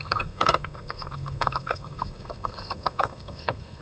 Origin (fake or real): fake